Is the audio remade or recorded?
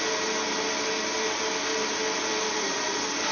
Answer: recorded